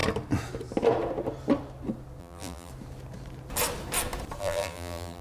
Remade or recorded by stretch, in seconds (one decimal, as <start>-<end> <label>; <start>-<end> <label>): 0.0-2.2 recorded; 2.2-2.7 remade; 2.7-4.4 recorded; 4.4-5.2 remade